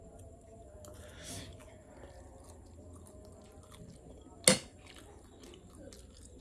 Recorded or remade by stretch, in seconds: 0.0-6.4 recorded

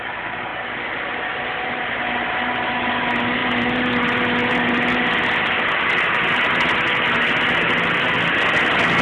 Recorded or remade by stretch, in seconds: 0.0-9.0 recorded

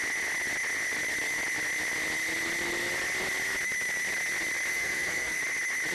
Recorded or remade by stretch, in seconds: 0.0-4.7 recorded; 4.7-5.4 remade; 5.4-5.9 recorded

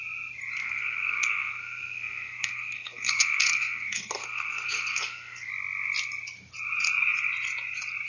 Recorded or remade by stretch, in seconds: 0.0-0.6 recorded; 0.6-5.5 remade; 5.5-8.1 recorded

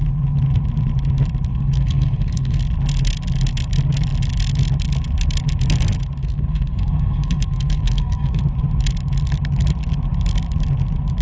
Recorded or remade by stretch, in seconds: 0.0-1.5 recorded; 1.5-2.6 remade; 2.6-6.2 recorded; 6.2-8.4 remade; 8.4-11.2 recorded

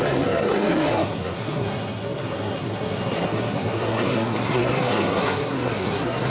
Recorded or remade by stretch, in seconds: 0.0-6.3 remade